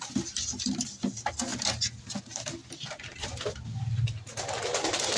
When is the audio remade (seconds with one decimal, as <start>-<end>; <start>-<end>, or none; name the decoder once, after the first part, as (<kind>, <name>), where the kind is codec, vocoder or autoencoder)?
none